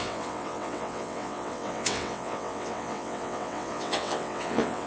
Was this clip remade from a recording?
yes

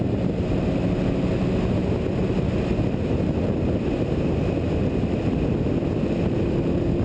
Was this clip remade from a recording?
no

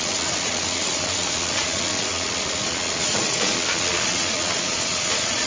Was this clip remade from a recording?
yes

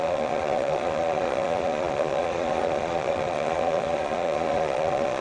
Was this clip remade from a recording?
yes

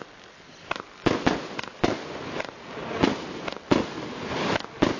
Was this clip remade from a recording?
no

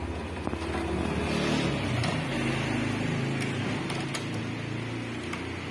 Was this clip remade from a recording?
no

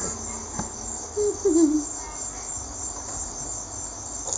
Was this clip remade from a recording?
no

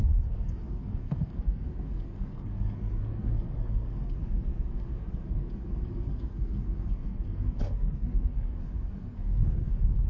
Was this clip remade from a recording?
yes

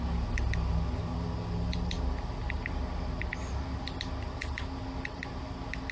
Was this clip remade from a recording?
no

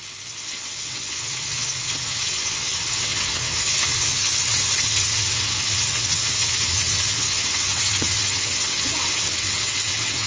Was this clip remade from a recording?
yes